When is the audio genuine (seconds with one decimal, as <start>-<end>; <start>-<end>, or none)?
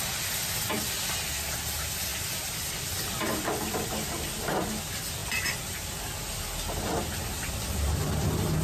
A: 0.0-2.1; 4.6-8.6